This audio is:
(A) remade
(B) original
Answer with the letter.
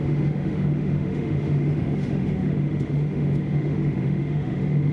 A